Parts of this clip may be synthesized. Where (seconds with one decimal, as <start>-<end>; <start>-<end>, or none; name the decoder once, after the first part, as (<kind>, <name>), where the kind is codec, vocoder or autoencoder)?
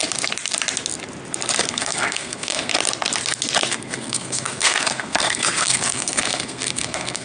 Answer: 1.7-2.7 (codec, SNAC); 3.7-7.2